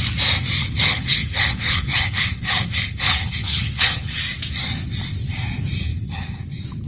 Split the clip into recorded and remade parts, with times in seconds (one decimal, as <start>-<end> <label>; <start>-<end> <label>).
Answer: 0.0-0.6 recorded; 0.6-4.2 remade; 4.2-5.9 recorded; 5.9-6.4 remade; 6.4-6.9 recorded